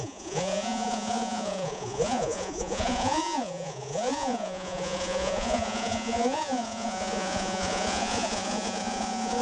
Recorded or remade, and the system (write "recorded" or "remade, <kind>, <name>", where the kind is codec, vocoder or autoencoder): remade, vocoder, Vocos